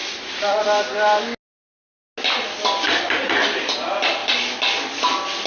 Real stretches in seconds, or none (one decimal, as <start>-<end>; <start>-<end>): 0.6-5.5